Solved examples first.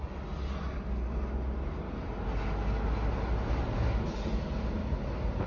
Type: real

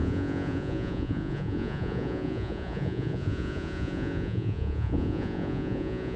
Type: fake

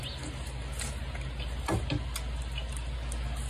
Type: real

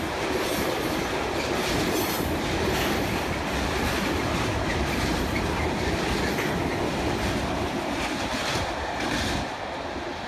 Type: real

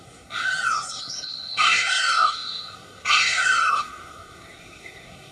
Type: fake